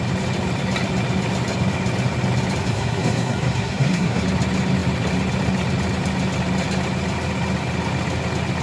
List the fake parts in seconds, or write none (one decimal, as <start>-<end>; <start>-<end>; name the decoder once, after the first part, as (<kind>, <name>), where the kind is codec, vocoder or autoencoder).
2.6-4.2 (codec, SNAC)